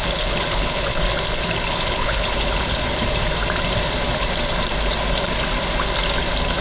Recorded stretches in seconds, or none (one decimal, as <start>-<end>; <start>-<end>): 0.9-1.6; 2.8-6.6